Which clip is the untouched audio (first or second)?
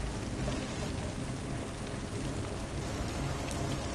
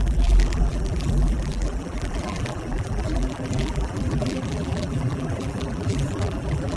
first